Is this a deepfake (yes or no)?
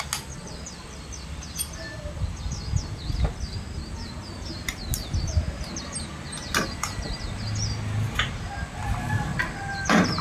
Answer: no